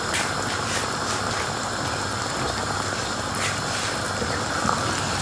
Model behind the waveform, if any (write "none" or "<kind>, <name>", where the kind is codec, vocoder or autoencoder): none